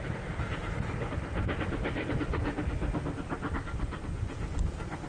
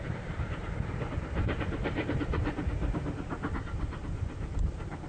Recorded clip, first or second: first